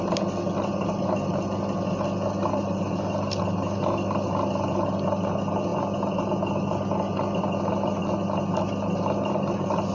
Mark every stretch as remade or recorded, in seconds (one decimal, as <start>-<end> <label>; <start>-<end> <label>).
0.0-9.9 recorded